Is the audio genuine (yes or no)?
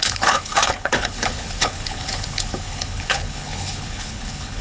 no